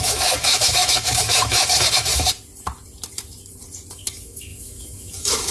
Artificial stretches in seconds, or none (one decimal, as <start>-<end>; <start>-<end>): 0.0-2.1; 3.9-5.5